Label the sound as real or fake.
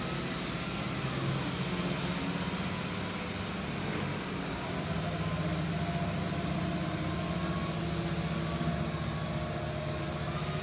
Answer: real